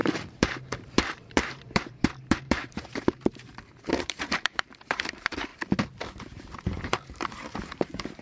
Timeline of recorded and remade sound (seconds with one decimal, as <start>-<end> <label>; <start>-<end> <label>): 0.0-5.5 remade; 5.5-6.2 recorded; 6.2-8.2 remade

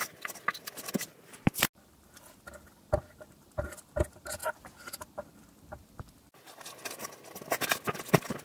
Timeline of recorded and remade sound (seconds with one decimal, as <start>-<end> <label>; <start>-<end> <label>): 0.0-8.4 recorded

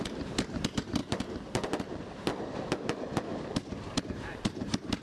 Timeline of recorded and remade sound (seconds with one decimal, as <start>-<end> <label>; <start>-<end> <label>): 0.0-1.0 remade; 1.0-4.0 recorded; 4.0-5.0 remade

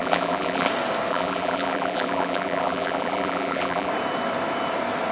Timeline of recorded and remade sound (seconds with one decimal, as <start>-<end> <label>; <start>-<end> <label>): 0.0-0.7 remade; 0.7-1.1 recorded; 1.1-3.9 remade; 3.9-5.1 recorded

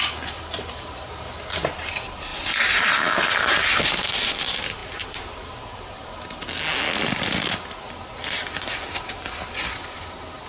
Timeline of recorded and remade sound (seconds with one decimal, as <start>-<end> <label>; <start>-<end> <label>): 0.0-4.8 recorded; 4.8-6.1 remade; 6.1-10.5 recorded

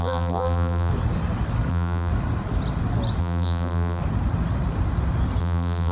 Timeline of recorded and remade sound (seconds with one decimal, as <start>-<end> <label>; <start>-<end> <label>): 0.0-0.9 remade; 0.9-1.7 recorded; 1.7-2.1 remade; 2.1-3.2 recorded; 3.2-4.0 remade; 4.0-5.4 recorded; 5.4-5.9 remade

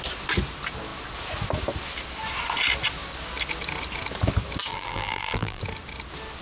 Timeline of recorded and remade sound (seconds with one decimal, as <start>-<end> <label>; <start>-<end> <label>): 0.0-4.7 recorded; 4.7-5.6 remade; 5.6-6.4 recorded